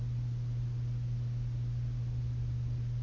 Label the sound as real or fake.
real